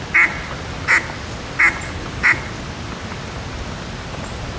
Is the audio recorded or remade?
recorded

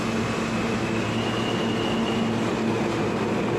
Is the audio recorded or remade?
recorded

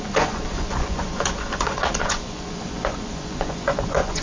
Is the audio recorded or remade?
remade